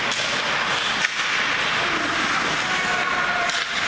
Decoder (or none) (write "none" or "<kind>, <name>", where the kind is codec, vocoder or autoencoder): none